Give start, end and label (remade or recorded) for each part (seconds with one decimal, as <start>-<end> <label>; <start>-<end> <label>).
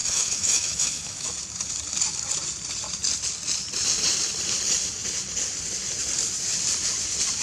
0.0-1.3 remade; 1.3-7.4 recorded